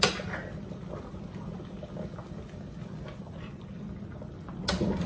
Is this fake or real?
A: real